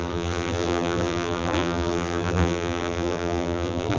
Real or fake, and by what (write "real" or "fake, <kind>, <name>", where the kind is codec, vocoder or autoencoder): fake, vocoder, BigVGAN v2